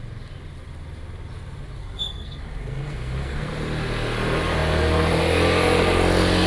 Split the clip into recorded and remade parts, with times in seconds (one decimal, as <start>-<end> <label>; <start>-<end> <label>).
0.0-1.8 recorded; 1.8-3.5 remade; 3.5-6.5 recorded